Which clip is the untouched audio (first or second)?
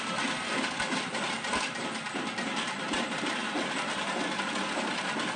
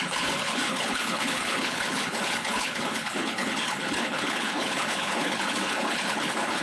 first